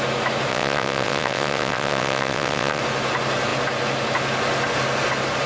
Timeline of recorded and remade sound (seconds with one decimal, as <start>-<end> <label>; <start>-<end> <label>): 0.0-0.5 recorded; 0.5-2.8 remade; 2.8-5.5 recorded